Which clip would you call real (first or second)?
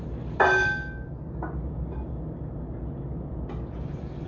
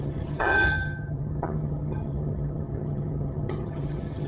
first